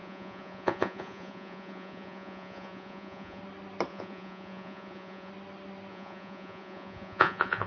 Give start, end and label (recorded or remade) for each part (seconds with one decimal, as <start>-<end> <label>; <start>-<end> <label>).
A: 0.0-3.4 remade; 3.4-3.9 recorded; 3.9-5.3 remade; 5.3-5.9 recorded; 5.9-7.7 remade